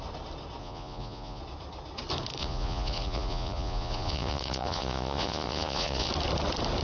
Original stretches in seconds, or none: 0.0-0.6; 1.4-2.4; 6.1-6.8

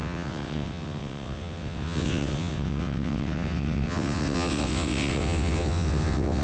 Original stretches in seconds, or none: none

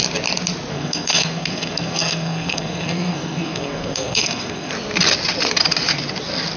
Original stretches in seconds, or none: 0.0-0.7; 4.7-6.6

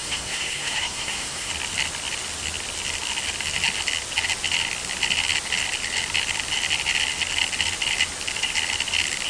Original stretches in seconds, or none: 1.5-9.3